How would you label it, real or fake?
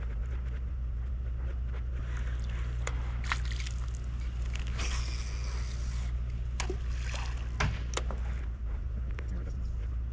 real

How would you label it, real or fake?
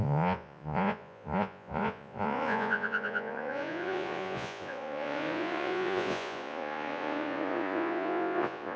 fake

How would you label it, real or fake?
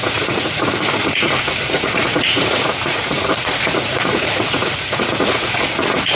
fake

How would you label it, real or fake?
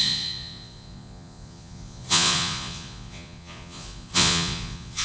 fake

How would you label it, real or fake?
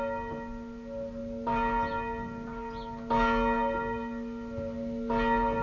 real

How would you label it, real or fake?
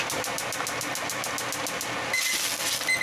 real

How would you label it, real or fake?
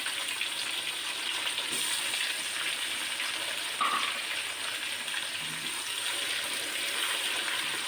real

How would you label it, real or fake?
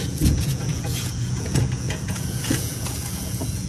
fake